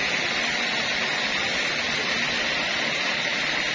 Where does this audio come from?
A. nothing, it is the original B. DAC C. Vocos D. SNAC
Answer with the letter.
A